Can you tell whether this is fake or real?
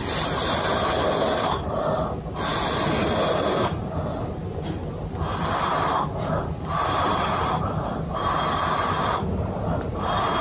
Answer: real